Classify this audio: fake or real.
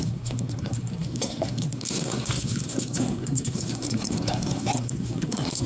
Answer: fake